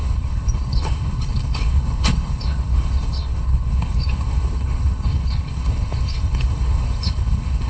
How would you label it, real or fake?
fake